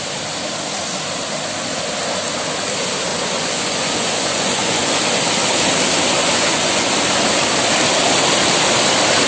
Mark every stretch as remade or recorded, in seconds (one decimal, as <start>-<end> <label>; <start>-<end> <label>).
0.0-3.1 recorded; 3.1-5.0 remade; 5.0-6.2 recorded; 6.2-6.9 remade; 6.9-9.3 recorded